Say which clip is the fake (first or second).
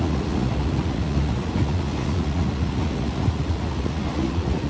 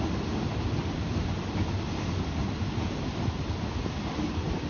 first